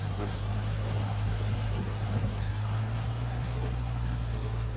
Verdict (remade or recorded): remade